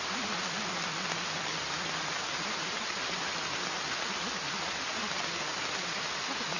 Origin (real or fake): real